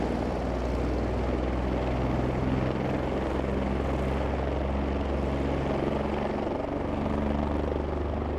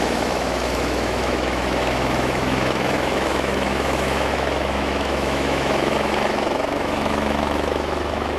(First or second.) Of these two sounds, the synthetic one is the second